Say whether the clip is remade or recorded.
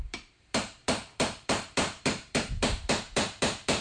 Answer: remade